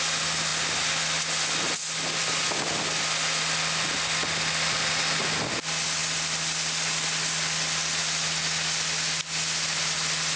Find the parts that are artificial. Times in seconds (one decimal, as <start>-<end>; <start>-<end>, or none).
none